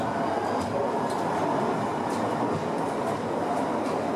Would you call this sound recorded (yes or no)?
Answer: yes